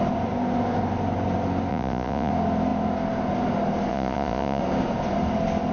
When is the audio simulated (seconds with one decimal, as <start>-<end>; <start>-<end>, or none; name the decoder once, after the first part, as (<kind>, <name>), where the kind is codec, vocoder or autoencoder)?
1.7-2.3 (vocoder, Vocos); 3.9-4.6